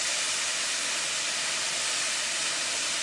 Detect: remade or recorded recorded